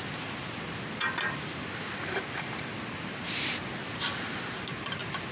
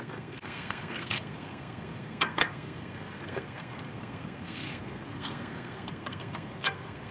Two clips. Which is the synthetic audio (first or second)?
second